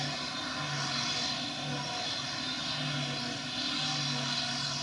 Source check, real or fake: real